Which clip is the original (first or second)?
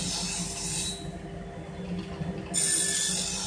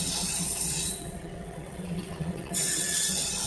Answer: first